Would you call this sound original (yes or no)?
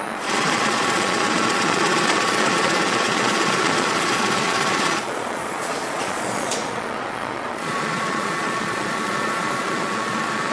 no